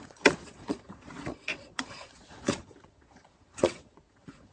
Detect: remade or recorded remade